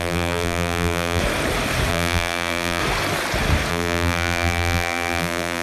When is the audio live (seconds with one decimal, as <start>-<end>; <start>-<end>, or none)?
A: 1.2-1.9; 2.8-3.7